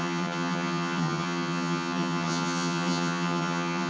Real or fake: fake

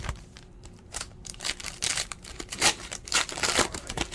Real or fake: fake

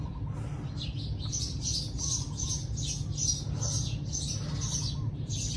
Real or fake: real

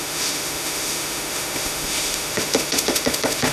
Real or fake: fake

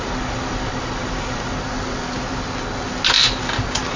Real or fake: real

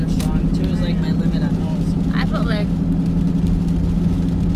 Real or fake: real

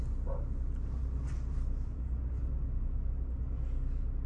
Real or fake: real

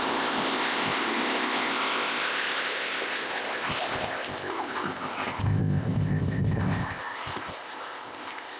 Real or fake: fake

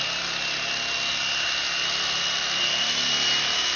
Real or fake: real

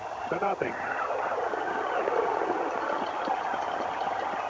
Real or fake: fake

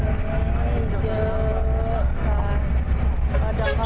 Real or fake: real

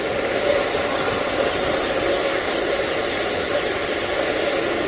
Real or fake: real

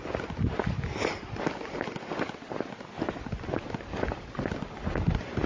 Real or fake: real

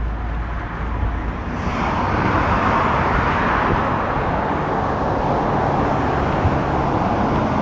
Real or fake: real